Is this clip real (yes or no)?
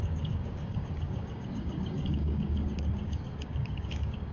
no